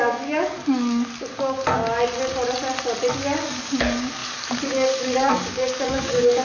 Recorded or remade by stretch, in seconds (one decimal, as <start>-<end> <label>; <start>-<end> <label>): 0.0-1.8 remade; 1.8-3.1 recorded; 3.1-6.4 remade